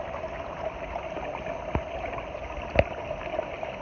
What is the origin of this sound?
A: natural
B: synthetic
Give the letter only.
A